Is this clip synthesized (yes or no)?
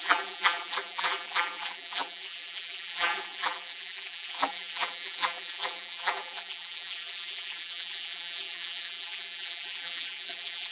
yes